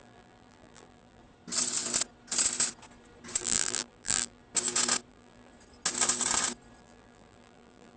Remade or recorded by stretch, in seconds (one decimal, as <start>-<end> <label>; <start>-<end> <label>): 0.0-1.2 remade; 1.2-3.4 recorded; 3.4-4.4 remade; 4.4-5.1 recorded; 5.1-5.5 remade; 5.5-6.8 recorded; 6.8-8.0 remade